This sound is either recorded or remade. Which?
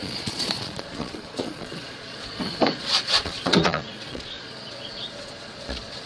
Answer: remade